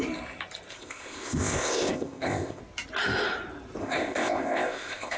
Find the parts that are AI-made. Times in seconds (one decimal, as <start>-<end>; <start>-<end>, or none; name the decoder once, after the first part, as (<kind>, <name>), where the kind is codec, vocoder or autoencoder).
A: 0.7-2.6 (codec, ZipCodec); 3.8-5.2